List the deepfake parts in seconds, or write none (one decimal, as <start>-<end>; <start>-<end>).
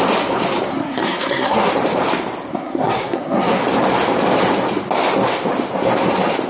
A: 0.7-1.7; 2.5-3.6